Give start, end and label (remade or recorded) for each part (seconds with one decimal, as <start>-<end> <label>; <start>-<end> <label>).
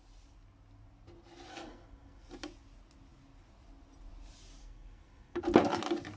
0.0-1.5 recorded; 1.5-2.3 remade; 2.3-4.6 recorded; 4.6-5.4 remade; 5.4-6.2 recorded